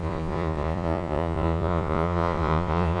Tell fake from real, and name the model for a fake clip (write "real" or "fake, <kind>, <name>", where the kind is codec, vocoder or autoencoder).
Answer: fake, vocoder, Vocos